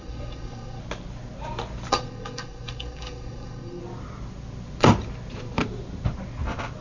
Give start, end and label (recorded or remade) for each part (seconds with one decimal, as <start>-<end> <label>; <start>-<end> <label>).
0.0-0.8 remade; 0.8-1.9 recorded; 1.9-3.8 remade; 3.8-6.8 recorded